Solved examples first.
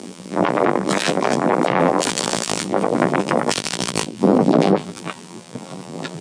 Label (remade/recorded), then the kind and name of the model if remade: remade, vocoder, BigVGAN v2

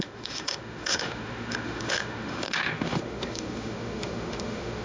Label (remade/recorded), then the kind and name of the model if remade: remade, autoencoder, DAC-VAE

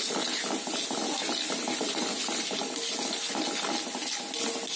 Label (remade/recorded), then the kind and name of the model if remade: recorded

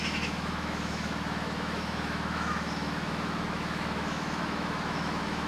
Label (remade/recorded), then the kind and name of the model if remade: remade, autoencoder, DAC-VAE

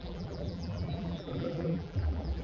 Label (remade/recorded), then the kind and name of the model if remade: remade, vocoder, BigVGAN v2